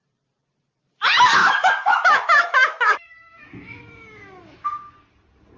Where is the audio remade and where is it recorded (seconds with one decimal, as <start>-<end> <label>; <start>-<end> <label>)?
0.0-1.4 recorded; 1.4-4.8 remade; 4.8-5.6 recorded